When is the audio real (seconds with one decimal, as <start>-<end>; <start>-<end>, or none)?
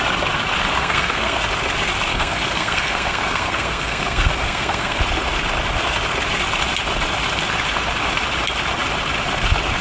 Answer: 0.0-0.8; 1.4-2.1; 5.0-9.8